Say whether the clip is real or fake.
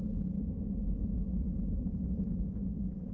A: real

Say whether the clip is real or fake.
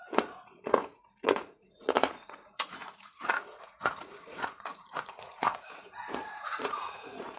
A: fake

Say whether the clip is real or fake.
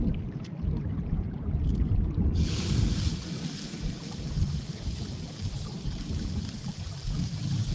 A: real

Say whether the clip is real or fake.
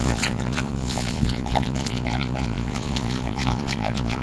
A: fake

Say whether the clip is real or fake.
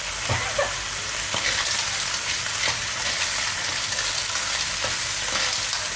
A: real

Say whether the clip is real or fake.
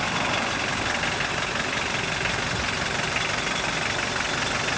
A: real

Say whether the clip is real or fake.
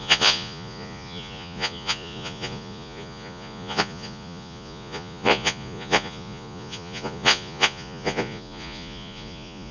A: fake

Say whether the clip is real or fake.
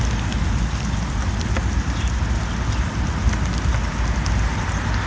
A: real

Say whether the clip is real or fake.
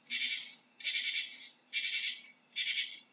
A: real